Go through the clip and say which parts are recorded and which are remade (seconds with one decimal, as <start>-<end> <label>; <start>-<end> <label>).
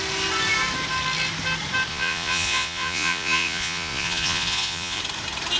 0.0-1.9 recorded; 1.9-5.0 remade; 5.0-5.6 recorded